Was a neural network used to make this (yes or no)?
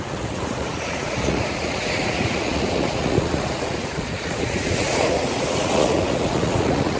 yes